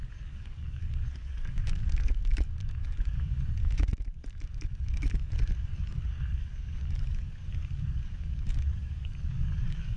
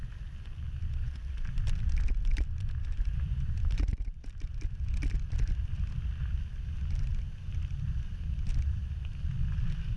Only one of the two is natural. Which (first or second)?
second